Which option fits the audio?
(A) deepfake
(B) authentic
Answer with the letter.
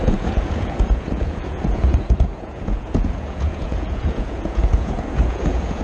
A